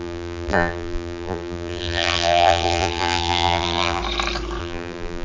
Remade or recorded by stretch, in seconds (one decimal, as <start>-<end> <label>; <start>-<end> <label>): 0.0-4.0 remade; 4.0-4.6 recorded; 4.6-5.2 remade